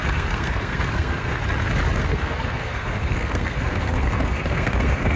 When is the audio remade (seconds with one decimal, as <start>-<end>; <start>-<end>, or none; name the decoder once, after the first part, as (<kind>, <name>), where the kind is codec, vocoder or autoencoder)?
0.0-1.4 (codec, SNAC); 2.0-5.2